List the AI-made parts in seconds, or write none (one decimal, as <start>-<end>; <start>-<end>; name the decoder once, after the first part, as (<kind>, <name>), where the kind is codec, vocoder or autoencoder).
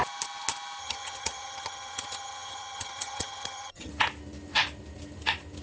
0.8-3.9 (vocoder, HiFi-GAN)